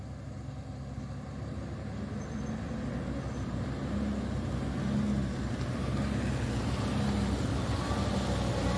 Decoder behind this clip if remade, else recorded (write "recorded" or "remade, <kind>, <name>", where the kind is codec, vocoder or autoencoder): recorded